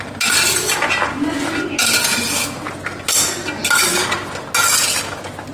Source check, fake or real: real